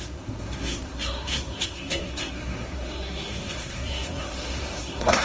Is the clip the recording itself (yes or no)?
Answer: no